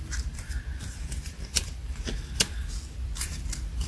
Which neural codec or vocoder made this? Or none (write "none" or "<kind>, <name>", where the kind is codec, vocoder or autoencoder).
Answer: vocoder, BigVGAN v2